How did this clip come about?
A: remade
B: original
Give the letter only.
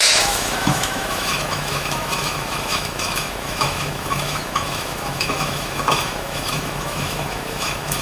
A